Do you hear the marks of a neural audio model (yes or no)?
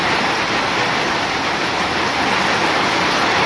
no